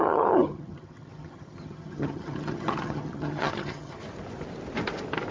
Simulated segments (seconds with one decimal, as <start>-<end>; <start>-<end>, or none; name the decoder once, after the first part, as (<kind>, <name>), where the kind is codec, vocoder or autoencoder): 0.0-4.0 (vocoder, HiFi-GAN)